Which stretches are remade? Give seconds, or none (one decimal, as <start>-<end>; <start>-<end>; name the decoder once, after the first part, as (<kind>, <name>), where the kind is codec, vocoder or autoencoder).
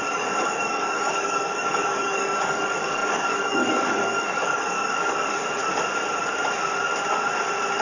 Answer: 0.0-5.6 (codec, DAC)